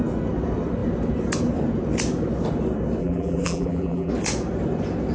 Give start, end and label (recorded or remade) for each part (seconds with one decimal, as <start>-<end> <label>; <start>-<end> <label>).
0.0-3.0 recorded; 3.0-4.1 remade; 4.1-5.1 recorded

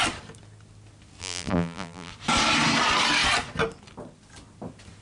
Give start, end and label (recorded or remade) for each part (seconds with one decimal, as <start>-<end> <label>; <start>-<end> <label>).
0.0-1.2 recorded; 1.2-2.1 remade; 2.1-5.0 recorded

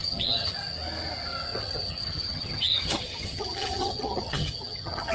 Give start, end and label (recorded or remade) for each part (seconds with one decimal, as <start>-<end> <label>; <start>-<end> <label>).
0.0-0.5 remade; 0.5-1.6 recorded; 1.6-5.1 remade

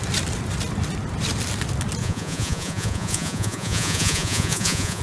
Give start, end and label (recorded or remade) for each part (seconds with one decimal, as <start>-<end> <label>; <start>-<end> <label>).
0.0-2.0 recorded; 2.0-5.0 remade

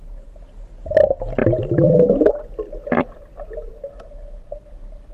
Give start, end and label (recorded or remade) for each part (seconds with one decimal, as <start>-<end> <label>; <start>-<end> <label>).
0.0-5.1 recorded

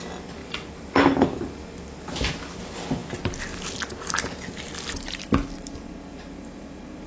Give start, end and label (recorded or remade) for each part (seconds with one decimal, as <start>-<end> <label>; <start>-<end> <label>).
0.0-0.4 recorded; 0.4-1.0 remade; 1.0-7.1 recorded

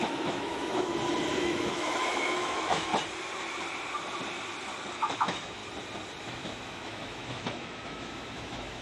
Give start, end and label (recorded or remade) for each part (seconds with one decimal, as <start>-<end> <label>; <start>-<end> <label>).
0.0-0.9 remade; 0.9-1.4 recorded; 1.4-2.9 remade; 2.9-5.0 recorded; 5.0-5.6 remade; 5.6-6.2 recorded; 6.2-8.8 remade

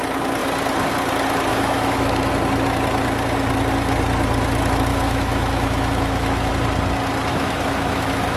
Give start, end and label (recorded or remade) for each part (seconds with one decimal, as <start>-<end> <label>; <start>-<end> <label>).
0.0-1.5 recorded; 1.5-2.3 remade; 2.3-4.9 recorded; 4.9-6.5 remade; 6.5-7.3 recorded; 7.3-8.4 remade